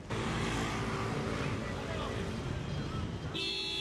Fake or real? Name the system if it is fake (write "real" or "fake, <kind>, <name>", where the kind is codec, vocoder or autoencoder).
real